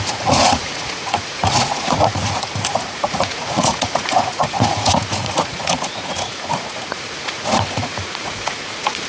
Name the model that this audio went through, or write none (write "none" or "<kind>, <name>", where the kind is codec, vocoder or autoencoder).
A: vocoder, Vocos